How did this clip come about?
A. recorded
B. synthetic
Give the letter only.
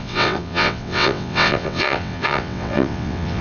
B